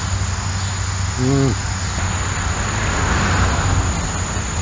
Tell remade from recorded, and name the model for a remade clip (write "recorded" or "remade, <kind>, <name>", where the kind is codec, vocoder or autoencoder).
recorded